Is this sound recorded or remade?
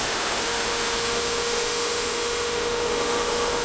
remade